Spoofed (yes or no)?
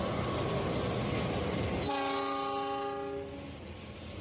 no